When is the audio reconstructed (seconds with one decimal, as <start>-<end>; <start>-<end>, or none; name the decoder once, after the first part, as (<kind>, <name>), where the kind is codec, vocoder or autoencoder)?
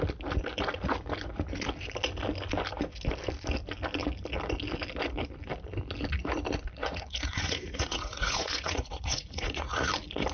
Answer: 6.8-9.9 (vocoder, Vocos)